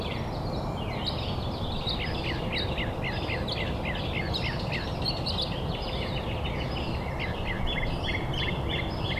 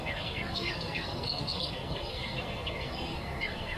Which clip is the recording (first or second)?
first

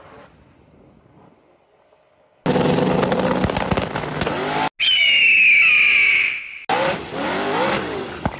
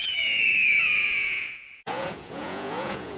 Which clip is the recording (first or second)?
first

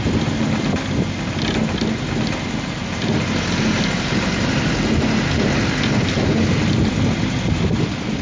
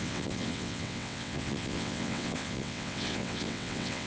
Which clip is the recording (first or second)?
first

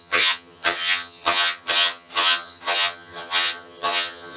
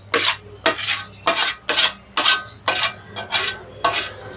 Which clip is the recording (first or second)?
second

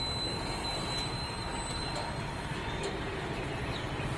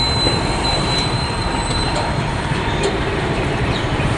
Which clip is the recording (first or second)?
first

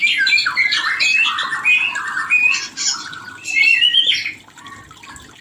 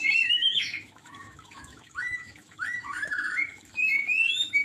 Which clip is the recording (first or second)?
first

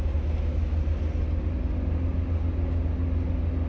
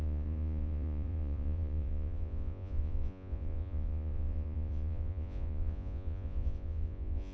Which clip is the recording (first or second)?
first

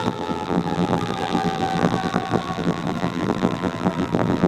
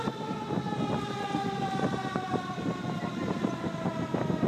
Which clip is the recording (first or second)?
second